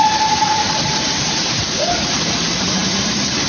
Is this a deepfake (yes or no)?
yes